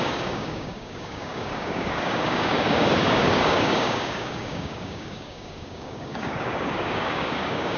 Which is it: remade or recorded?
remade